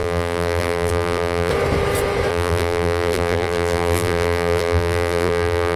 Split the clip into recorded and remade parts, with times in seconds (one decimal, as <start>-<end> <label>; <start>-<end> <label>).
0.0-1.5 remade; 1.5-2.3 recorded; 2.3-5.8 remade